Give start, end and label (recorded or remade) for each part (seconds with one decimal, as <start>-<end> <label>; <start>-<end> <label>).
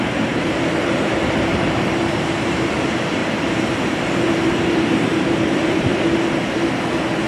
0.0-5.9 remade; 5.9-7.3 recorded